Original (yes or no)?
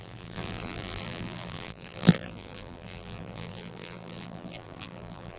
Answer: no